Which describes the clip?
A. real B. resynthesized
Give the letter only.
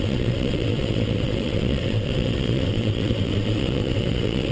B